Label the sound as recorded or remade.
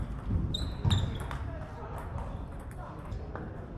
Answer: recorded